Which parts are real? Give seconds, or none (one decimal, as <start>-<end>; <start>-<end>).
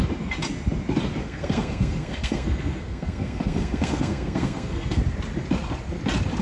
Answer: 0.0-1.2; 5.0-6.4